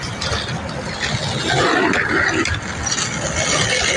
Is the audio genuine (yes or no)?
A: yes